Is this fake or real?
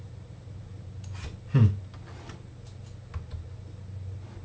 real